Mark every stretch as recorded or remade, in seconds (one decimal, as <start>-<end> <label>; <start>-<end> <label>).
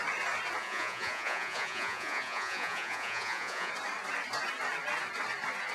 0.0-0.6 recorded; 0.6-3.7 remade; 3.7-5.7 recorded